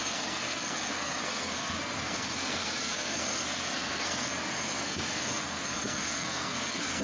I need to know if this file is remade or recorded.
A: remade